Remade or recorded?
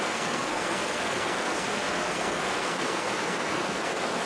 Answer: remade